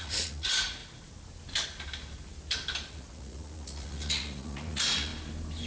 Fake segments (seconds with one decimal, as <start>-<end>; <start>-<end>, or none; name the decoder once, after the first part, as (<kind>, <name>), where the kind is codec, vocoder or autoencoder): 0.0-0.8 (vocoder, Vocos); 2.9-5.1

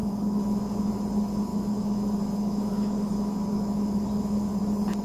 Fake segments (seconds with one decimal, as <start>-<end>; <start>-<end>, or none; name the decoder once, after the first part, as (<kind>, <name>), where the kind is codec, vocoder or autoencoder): 0.0-0.9 (autoencoder, DAC-VAE); 1.5-4.5

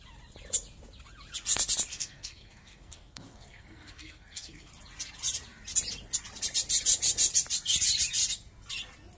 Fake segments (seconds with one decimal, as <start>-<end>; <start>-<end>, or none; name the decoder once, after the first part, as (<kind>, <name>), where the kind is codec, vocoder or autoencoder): 1.9-4.7 (codec, SNAC)

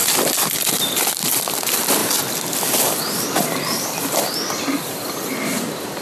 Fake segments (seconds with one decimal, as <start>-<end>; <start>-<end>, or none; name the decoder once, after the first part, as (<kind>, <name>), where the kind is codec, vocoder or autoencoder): 0.5-2.0 (vocoder, BigVGAN v2); 2.7-6.0